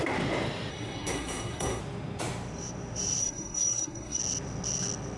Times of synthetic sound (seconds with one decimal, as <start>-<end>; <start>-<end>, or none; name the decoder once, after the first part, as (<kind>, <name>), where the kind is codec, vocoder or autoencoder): 0.7-1.8 (codec, SNAC); 3.2-4.2